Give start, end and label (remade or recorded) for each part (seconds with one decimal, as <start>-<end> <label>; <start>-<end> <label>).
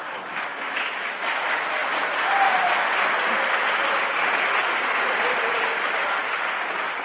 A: 0.0-0.5 recorded; 0.5-1.4 remade; 1.4-7.0 recorded